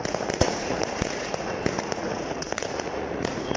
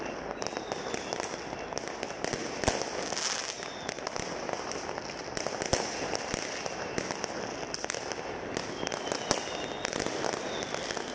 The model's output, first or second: first